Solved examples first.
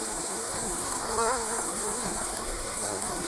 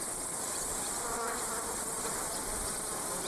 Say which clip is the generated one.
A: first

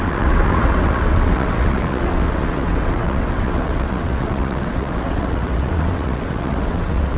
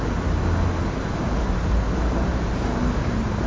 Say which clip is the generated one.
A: first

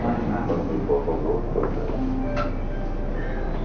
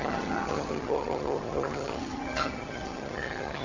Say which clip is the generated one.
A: second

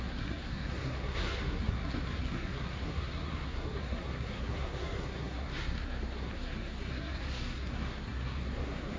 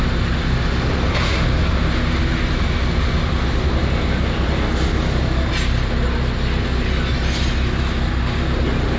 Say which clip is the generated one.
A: first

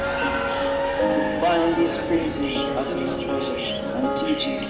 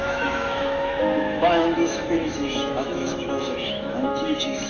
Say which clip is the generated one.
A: second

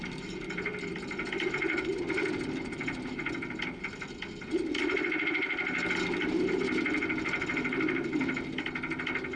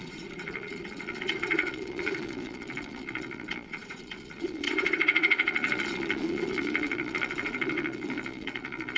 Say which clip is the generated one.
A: second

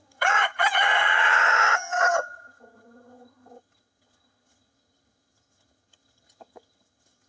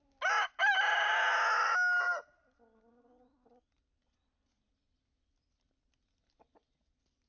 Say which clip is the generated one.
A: first